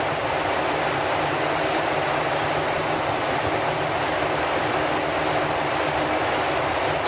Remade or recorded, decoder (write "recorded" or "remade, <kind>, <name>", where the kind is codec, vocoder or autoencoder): recorded